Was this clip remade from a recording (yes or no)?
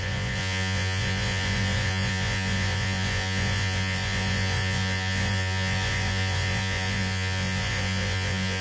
yes